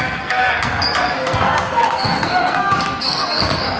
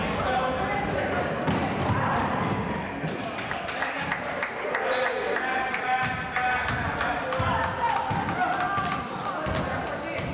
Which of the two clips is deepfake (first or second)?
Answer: first